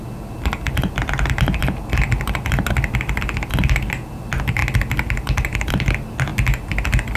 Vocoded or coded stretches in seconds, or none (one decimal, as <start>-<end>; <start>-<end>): none